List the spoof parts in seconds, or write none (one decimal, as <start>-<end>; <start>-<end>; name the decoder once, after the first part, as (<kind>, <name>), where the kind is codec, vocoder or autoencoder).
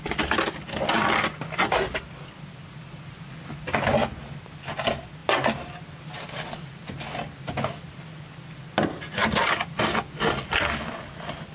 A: none